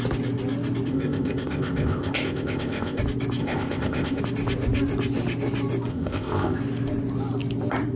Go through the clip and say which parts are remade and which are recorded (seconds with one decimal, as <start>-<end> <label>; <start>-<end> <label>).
0.0-0.9 recorded; 0.9-3.0 remade; 3.0-3.4 recorded; 3.4-4.2 remade; 4.2-5.9 recorded; 5.9-6.6 remade; 6.6-8.0 recorded